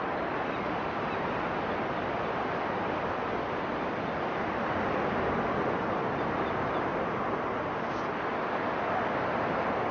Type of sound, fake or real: real